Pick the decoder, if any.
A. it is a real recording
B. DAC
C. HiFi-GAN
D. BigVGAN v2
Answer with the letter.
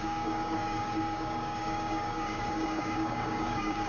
B